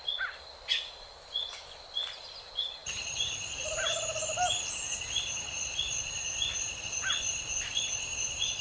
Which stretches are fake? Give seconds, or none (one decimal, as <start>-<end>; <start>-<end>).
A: none